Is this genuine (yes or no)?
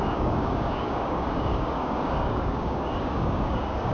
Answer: no